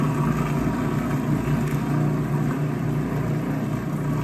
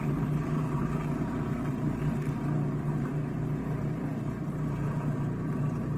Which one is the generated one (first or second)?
second